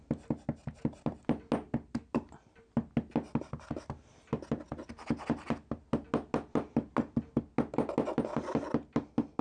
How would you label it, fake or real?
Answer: real